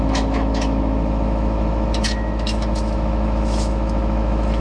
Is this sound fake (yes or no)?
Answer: yes